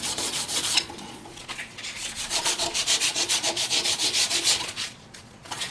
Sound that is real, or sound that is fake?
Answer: fake